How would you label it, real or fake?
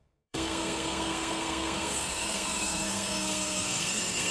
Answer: fake